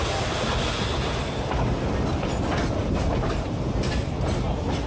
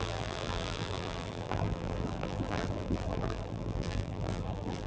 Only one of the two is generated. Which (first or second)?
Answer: second